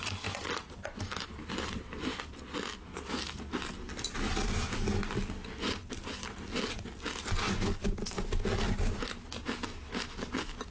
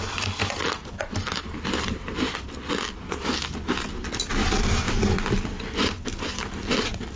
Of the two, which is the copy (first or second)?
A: second